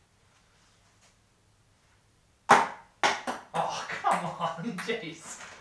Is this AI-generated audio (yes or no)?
no